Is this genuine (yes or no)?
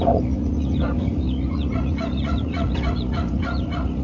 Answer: no